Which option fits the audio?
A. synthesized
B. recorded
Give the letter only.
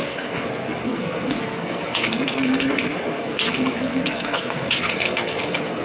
A